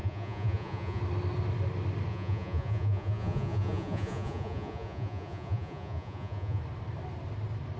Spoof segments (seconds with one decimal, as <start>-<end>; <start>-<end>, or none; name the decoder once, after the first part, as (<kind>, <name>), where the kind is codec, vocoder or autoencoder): 0.0-1.0 (vocoder, Vocos); 2.1-6.6